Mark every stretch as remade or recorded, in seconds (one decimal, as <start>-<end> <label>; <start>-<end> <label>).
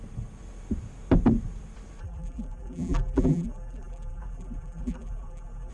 0.0-2.0 recorded; 2.0-5.7 remade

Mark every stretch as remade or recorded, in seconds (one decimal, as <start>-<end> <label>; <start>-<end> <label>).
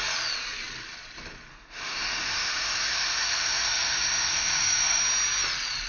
0.0-1.5 recorded; 1.5-5.0 remade; 5.0-5.9 recorded